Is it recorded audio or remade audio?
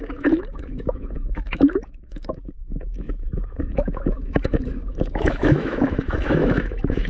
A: remade